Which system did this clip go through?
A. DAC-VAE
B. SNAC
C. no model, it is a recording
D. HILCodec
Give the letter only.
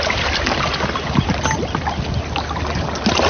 C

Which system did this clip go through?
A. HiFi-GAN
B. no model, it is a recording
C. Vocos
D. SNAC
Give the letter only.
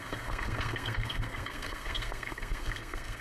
D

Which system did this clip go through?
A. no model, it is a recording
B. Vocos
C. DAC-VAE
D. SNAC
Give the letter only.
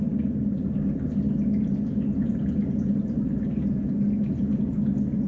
A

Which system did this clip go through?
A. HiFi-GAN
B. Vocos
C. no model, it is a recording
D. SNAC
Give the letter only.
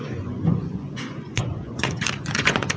B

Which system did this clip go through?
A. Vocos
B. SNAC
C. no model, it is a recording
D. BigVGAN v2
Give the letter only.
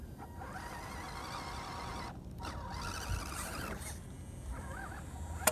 C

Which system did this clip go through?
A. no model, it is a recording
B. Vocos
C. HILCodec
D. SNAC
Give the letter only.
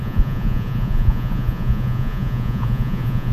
B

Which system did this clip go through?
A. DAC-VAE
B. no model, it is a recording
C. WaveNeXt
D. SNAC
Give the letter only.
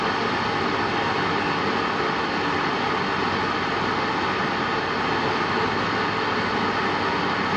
B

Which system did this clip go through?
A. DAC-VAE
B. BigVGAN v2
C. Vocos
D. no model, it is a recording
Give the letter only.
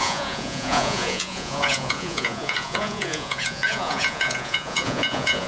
C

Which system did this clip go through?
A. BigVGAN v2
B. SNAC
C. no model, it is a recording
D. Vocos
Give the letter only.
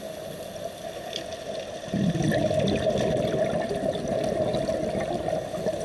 C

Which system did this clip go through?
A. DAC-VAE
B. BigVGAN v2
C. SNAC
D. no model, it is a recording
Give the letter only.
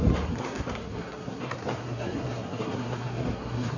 C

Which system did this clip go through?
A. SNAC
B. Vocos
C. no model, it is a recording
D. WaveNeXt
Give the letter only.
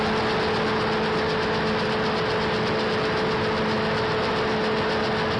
C